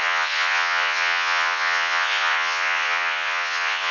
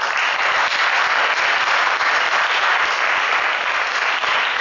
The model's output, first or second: first